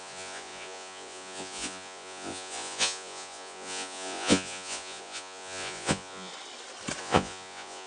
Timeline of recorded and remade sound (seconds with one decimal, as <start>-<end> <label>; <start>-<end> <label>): 0.0-6.3 remade; 6.3-7.0 recorded; 7.0-7.9 remade